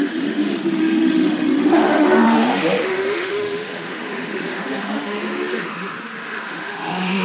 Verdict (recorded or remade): remade